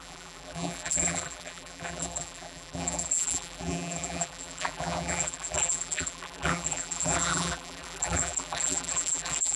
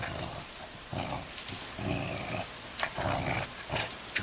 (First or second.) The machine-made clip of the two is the first